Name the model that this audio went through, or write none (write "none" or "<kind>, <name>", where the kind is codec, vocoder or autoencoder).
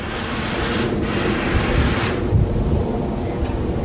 none